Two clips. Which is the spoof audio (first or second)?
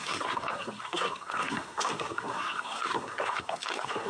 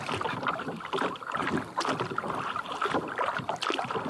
first